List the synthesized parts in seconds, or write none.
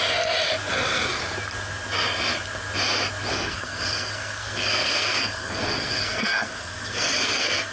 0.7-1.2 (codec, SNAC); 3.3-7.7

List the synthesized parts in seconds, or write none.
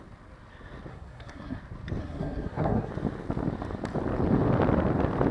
0.9-1.6 (codec, SNAC); 2.0-2.9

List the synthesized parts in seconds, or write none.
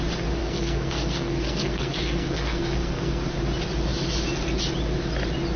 0.4-3.2 (codec, SNAC)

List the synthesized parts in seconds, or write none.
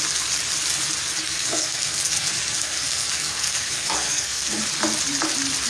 1.2-4.6 (codec, SNAC)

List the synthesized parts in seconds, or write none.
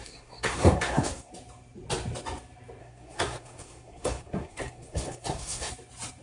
0.0-1.3 (codec, SNAC); 2.8-5.7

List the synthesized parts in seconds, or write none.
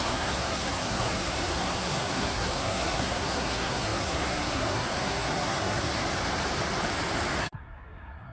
0.0-6.0 (codec, SNAC); 7.4-8.3